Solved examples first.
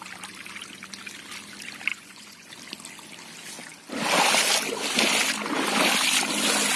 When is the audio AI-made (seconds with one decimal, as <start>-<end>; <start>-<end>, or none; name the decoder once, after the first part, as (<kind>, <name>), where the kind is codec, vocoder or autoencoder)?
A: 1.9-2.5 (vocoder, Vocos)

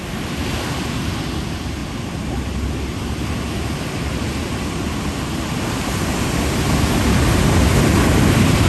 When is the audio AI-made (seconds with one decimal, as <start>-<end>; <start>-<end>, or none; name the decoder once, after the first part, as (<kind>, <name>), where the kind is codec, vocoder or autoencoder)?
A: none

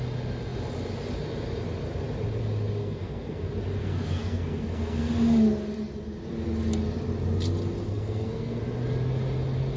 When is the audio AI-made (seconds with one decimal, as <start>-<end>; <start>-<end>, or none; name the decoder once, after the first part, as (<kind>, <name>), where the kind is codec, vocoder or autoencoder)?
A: 2.8-3.4 (codec, SNAC); 3.8-5.1; 7.9-8.6

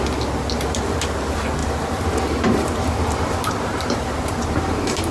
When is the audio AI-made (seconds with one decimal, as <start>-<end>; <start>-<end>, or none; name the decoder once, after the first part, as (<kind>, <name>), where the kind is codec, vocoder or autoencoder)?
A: 1.6-5.1 (vocoder, BigVGAN v2)

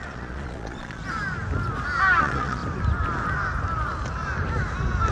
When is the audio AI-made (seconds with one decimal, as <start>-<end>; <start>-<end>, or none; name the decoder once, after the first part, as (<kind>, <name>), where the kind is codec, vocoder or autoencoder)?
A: 0.0-1.0 (vocoder, Vocos); 2.2-2.6

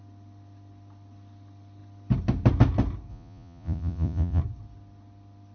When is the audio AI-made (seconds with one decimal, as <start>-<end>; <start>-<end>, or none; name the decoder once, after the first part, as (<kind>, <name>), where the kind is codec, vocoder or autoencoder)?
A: 3.1-4.4 (vocoder, Vocos)

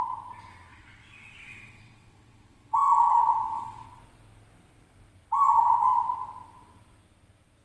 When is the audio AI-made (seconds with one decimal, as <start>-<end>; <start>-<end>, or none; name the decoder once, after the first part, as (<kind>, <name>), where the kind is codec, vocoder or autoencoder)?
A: 0.7-4.0 (vocoder, WaveNeXt)

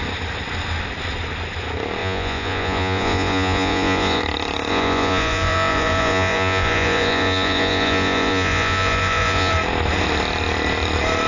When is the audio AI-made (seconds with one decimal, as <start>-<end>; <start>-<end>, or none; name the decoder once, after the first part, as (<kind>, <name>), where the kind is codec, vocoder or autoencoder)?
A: 2.0-4.2 (vocoder, Vocos); 4.7-9.5